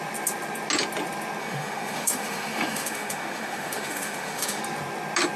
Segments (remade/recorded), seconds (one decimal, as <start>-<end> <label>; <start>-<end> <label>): 0.0-1.4 recorded; 1.4-4.6 remade; 4.6-5.4 recorded